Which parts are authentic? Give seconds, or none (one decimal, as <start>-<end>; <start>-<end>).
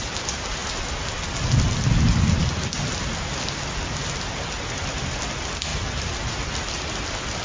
0.0-7.4